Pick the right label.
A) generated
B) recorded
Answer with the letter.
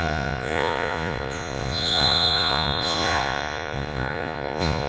A